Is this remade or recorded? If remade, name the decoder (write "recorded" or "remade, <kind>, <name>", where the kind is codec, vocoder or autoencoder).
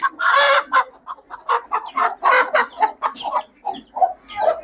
recorded